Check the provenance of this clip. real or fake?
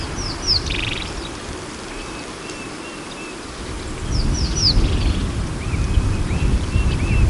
real